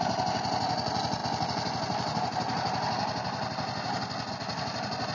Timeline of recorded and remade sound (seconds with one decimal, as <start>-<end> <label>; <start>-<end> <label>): 0.0-5.1 recorded